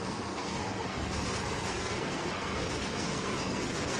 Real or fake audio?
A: fake